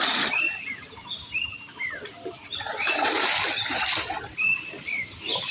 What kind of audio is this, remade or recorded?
recorded